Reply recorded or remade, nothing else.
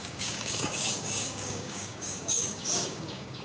remade